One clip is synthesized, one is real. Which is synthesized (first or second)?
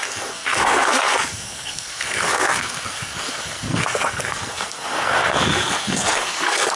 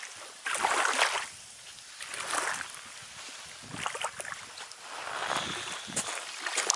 first